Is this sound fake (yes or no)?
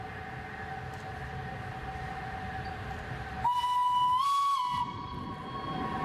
no